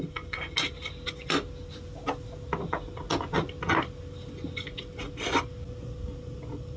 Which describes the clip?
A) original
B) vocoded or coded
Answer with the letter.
A